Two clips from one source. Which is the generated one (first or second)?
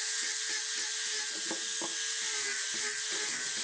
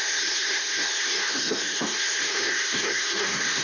second